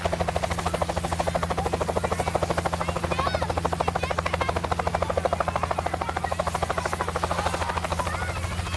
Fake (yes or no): no